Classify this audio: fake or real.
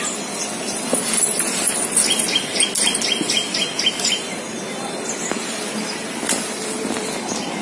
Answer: real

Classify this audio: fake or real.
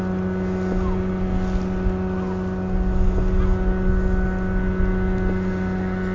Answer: real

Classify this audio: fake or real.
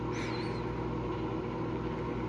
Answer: real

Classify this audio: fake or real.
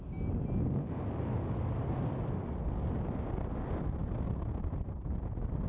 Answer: real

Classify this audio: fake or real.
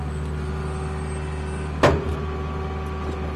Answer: real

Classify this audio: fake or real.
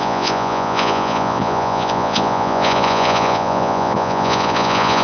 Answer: fake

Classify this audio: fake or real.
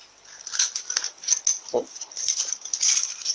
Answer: real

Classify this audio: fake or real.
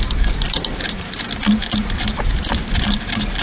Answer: real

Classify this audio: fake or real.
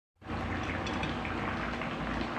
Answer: real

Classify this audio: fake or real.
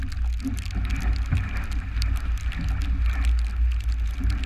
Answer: real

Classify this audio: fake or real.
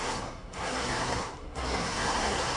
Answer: fake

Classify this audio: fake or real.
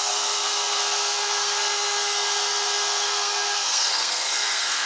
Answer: fake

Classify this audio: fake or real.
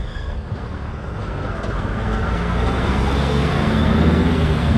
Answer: fake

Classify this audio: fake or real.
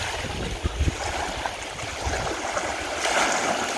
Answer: real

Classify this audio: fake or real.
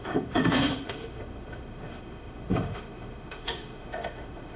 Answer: fake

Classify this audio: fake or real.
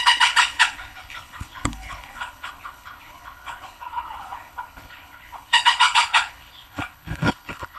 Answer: fake